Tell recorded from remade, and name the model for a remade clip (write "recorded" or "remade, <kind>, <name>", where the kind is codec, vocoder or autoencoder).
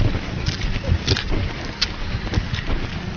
recorded